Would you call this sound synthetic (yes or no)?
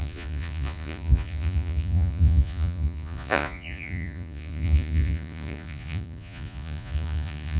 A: yes